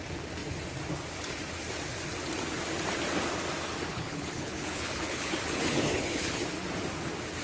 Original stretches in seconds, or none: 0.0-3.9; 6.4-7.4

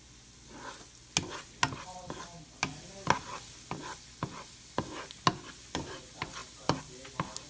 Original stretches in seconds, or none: 0.0-7.5